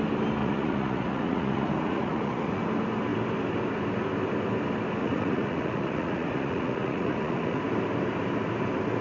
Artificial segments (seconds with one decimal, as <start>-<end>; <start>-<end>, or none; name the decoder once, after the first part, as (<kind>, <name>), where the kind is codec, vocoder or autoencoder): 0.4-2.6 (vocoder, Vocos); 5.0-7.6